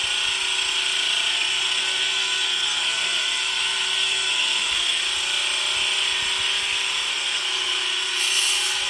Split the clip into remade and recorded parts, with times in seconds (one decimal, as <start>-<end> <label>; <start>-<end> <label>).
0.0-1.3 recorded; 1.3-5.0 remade; 5.0-7.1 recorded; 7.1-8.9 remade